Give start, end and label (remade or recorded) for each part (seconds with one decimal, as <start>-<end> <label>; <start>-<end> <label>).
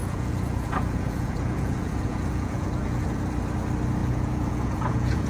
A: 0.0-3.2 remade; 3.2-4.0 recorded; 4.0-5.3 remade